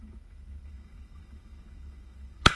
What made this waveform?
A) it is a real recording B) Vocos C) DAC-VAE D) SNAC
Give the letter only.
C